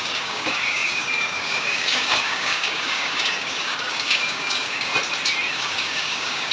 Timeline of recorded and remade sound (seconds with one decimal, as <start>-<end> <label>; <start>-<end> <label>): 0.0-4.9 remade; 4.9-5.5 recorded; 5.5-6.5 remade